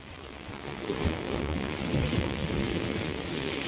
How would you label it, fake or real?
fake